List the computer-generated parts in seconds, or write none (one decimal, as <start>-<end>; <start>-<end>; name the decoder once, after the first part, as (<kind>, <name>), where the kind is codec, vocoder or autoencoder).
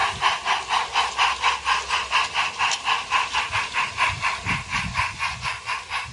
4.7-5.6 (vocoder, Vocos)